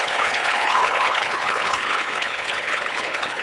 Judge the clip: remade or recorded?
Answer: remade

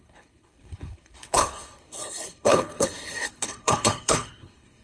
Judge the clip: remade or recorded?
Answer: remade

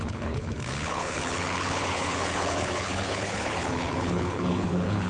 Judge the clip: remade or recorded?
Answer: remade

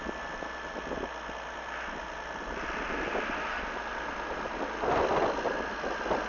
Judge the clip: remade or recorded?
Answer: recorded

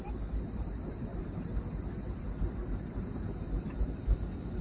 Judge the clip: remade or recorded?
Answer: recorded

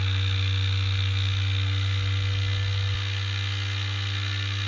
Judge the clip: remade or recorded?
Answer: recorded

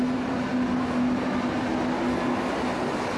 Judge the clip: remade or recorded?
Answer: recorded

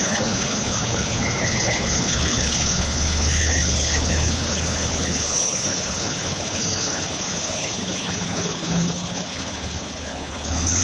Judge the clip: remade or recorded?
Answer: remade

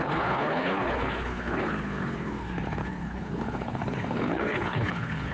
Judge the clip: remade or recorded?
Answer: remade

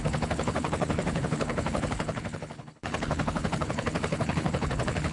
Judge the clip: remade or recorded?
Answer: remade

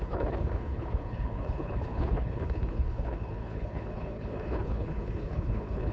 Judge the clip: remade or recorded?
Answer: remade